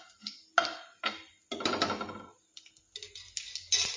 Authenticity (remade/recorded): recorded